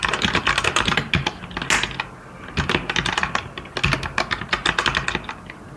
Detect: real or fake real